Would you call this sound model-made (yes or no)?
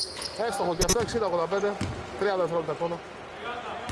no